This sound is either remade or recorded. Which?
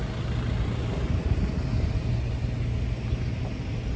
recorded